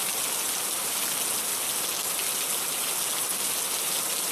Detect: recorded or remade recorded